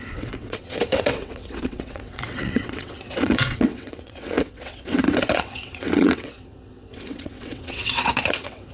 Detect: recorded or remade remade